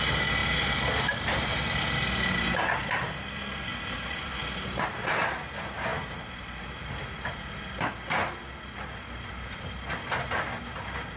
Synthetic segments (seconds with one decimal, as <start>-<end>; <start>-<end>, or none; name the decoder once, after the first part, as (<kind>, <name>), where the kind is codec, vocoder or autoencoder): 3.7-4.8 (vocoder, BigVGAN v2)

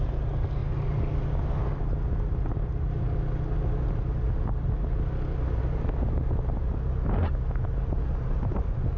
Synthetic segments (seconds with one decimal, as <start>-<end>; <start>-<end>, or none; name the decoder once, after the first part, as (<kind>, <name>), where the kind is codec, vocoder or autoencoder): none